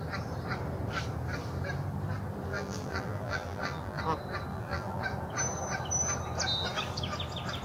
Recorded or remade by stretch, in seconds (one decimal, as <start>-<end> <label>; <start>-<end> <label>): 0.0-2.5 recorded; 2.5-4.0 remade; 4.0-4.5 recorded; 4.5-5.0 remade; 5.0-7.6 recorded